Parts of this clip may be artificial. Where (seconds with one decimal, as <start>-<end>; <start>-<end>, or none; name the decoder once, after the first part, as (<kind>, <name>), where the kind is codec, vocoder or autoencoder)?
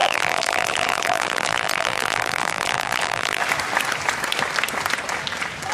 0.0-3.4 (vocoder, BigVGAN v2)